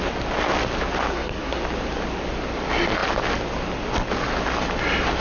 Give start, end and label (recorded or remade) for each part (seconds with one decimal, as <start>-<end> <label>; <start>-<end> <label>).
0.0-1.1 recorded; 1.1-1.6 remade; 1.6-5.2 recorded